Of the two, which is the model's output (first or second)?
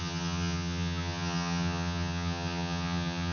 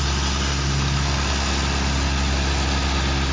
first